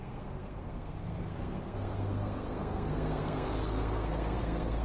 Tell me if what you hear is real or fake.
fake